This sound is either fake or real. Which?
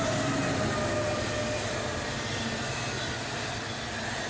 real